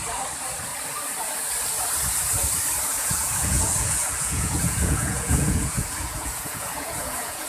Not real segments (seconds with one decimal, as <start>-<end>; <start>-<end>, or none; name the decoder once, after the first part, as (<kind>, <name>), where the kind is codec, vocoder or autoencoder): 2.9-7.5 (vocoder, Vocos)